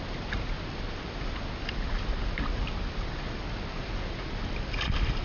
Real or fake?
real